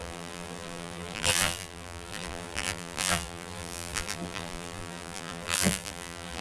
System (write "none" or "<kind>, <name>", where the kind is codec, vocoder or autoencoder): vocoder, BigVGAN v2